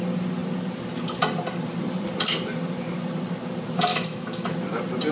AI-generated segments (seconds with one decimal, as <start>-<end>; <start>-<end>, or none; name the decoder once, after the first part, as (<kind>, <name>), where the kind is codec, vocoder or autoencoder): 3.9-4.5 (autoencoder, DAC-VAE)

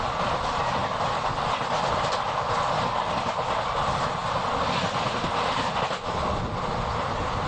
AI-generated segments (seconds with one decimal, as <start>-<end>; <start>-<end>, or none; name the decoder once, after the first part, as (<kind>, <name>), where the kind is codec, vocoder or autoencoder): none

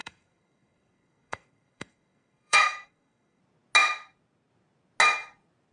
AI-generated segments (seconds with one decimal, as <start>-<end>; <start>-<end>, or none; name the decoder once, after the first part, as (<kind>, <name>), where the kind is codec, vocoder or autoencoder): 0.0-3.4 (codec, SNAC)

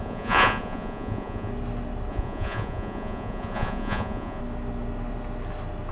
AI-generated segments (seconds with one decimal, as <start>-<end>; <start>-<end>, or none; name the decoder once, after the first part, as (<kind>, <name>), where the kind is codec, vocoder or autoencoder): 0.0-1.5 (vocoder, Vocos); 2.1-4.4